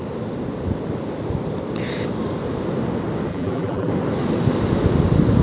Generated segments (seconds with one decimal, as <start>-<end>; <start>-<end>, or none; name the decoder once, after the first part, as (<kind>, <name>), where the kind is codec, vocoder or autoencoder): 3.3-3.9 (vocoder, BigVGAN v2)